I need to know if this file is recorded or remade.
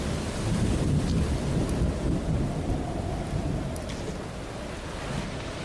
recorded